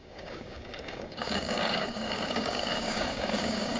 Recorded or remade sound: remade